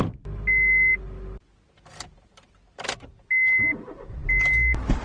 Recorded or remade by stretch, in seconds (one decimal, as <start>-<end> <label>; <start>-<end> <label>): 0.0-5.0 recorded